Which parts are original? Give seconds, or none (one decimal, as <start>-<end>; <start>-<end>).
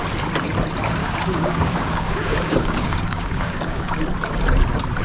0.0-1.0; 4.0-5.0